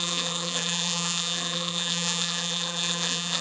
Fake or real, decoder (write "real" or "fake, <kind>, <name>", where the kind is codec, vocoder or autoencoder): fake, vocoder, BigVGAN v2